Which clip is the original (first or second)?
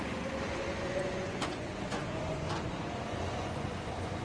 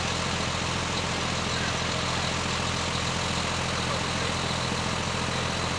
second